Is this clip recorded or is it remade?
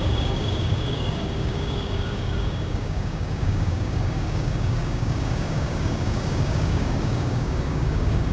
remade